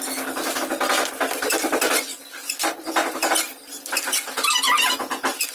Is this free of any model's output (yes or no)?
yes